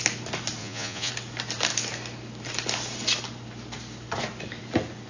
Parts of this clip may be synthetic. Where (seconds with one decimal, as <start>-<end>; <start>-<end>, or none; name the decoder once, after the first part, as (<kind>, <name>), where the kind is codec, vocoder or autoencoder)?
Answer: 0.6-1.1 (vocoder, Vocos)